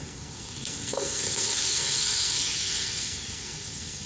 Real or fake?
fake